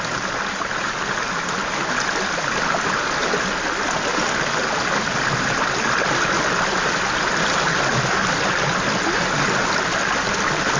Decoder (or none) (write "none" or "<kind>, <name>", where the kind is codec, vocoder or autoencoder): none